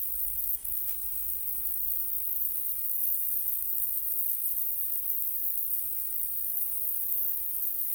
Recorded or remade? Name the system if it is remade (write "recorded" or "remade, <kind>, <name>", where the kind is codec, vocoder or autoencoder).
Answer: remade, codec, SNAC